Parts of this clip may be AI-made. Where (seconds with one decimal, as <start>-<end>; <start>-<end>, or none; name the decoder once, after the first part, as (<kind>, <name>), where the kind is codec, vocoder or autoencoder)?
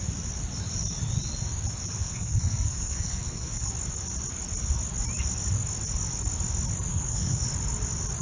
1.9-3.7 (codec, SNAC); 6.9-7.4